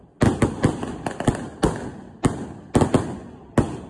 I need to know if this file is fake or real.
real